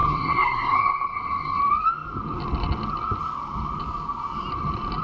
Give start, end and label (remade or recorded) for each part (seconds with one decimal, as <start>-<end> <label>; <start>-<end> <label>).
0.0-1.6 remade; 1.6-5.0 recorded